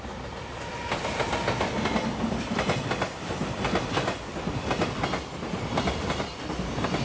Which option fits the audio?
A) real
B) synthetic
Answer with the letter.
A